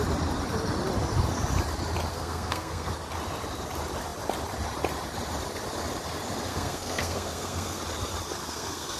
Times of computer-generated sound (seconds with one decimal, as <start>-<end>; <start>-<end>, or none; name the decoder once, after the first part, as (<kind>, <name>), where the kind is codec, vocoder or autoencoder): 2.1-2.9 (codec, SNAC); 6.5-7.8; 8.4-9.0